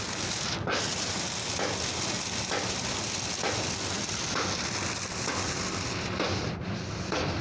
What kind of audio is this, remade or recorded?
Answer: recorded